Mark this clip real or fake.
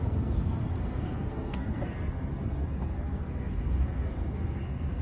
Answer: fake